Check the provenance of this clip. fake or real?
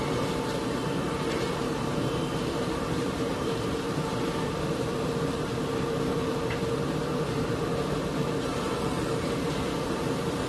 fake